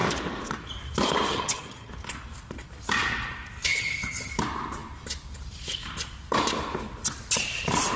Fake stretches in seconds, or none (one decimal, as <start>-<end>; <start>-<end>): 1.3-1.9; 3.6-4.3